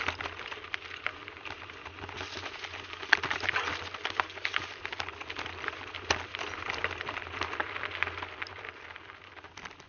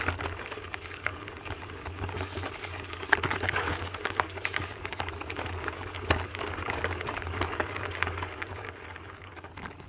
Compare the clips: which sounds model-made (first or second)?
second